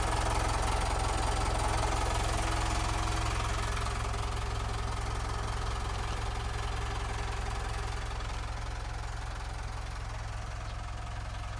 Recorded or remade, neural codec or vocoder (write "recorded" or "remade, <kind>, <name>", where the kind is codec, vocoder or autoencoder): recorded